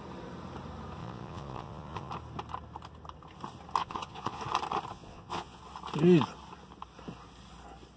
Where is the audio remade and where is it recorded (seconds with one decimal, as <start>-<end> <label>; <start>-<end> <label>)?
0.0-1.0 recorded; 1.0-2.1 remade; 2.1-3.8 recorded; 3.8-4.4 remade; 4.4-4.9 recorded; 4.9-5.6 remade; 5.6-8.0 recorded